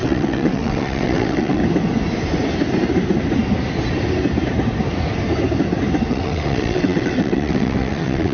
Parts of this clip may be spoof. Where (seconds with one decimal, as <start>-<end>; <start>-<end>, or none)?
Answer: 0.0-1.6; 6.1-8.3